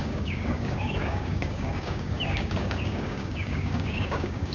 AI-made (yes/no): yes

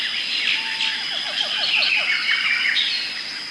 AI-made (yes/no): no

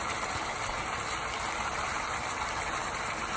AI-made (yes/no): yes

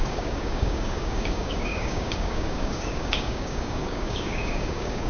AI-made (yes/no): yes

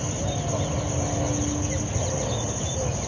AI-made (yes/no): no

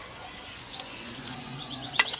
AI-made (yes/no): yes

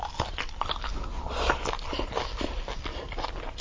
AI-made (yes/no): no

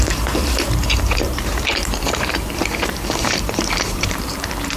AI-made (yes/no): yes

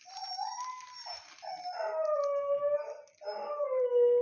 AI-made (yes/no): no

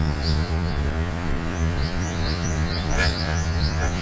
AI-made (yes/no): yes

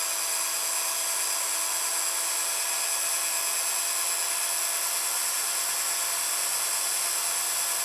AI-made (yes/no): no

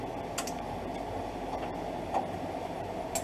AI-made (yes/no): no